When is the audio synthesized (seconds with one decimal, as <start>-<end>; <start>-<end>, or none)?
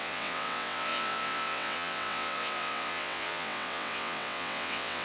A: 0.0-5.0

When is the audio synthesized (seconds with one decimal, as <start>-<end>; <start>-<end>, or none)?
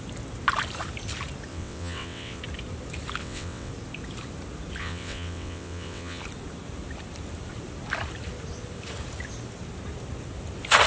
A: 1.5-2.4; 3.2-3.7; 4.8-6.2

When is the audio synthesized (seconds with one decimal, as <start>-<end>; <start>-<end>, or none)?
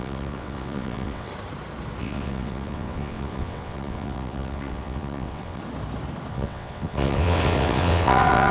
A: 0.0-1.3; 2.0-5.6; 6.3-8.5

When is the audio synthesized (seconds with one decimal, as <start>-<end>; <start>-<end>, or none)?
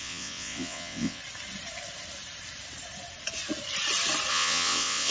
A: 0.0-1.2; 4.3-5.1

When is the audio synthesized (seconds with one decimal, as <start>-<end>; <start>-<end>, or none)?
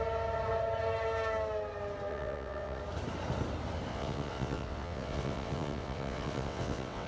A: 2.1-2.8; 3.9-7.1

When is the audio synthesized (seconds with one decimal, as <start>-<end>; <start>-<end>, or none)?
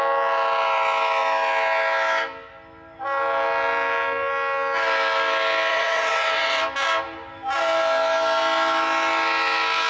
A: 5.7-6.6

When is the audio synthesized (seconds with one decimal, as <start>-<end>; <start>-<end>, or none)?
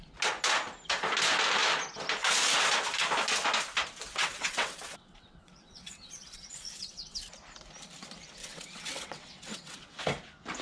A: 4.1-7.2; 8.4-10.0